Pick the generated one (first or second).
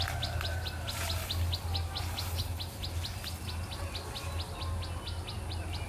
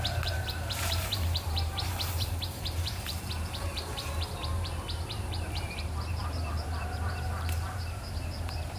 second